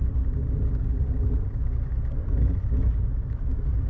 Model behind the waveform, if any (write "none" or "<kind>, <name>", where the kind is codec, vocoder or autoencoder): none